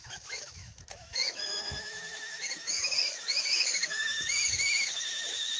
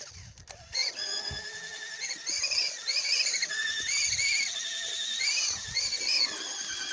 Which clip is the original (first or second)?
second